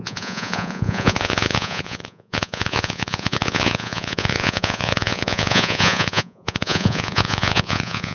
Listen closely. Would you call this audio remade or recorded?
remade